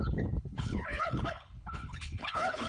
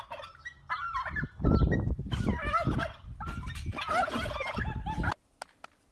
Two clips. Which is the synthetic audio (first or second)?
first